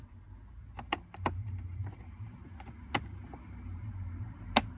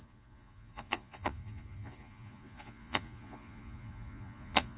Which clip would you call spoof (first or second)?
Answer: second